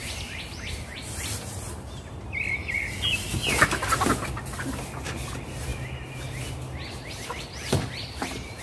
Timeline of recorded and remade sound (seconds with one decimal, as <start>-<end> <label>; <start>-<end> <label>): 0.0-2.2 remade; 2.2-2.6 recorded; 2.6-3.5 remade; 3.5-8.6 recorded